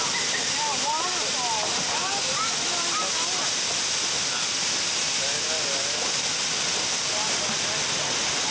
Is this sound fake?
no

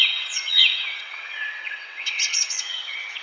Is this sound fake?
yes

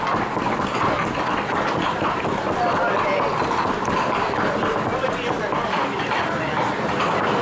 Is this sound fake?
no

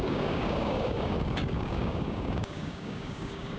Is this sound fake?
yes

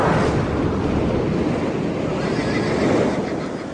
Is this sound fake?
no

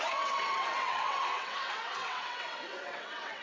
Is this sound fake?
yes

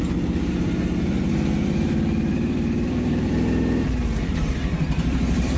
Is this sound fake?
yes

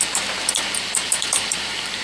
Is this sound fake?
yes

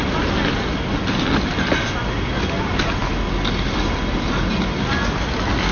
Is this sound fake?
no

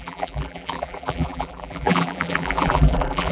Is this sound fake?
yes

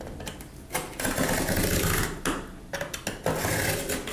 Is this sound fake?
no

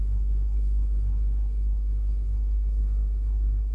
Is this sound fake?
yes